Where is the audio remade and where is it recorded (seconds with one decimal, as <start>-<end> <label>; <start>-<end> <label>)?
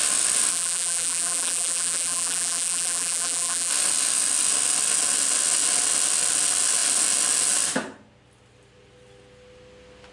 0.0-0.5 recorded; 0.5-3.7 remade; 3.7-10.1 recorded